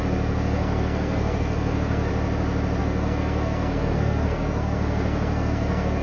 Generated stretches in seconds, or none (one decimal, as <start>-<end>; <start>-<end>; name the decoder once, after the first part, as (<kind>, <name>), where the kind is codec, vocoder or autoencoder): 0.0-2.1 (codec, SNAC); 2.8-6.0